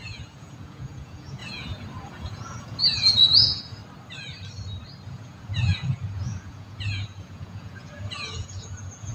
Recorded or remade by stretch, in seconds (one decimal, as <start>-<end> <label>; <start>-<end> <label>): 0.0-3.8 remade; 3.8-5.1 recorded; 5.1-9.1 remade